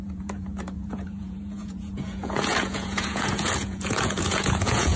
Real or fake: fake